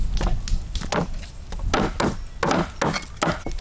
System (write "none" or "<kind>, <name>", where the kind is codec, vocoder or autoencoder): none